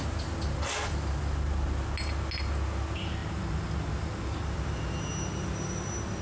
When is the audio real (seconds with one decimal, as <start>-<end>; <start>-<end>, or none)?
0.0-6.2

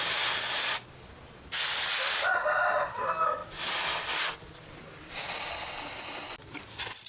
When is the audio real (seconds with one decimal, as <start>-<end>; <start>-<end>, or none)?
0.0-7.1

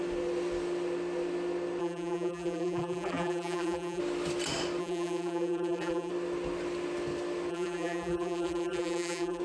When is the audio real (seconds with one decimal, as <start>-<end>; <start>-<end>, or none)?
0.0-1.8; 4.0-4.8; 6.1-7.5